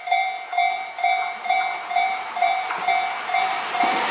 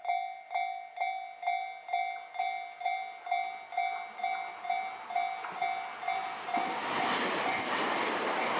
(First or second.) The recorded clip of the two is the second